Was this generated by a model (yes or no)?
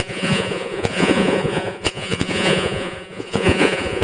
yes